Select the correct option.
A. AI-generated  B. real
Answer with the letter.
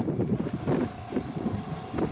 B